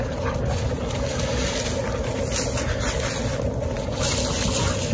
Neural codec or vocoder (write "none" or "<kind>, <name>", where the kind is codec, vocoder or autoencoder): none